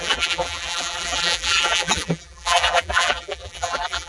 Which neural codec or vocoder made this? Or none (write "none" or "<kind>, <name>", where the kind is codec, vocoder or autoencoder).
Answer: vocoder, BigVGAN v2